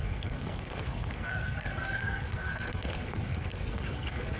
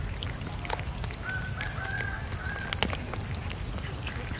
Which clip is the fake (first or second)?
first